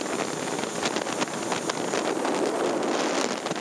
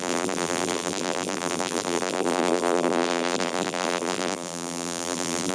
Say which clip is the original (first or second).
first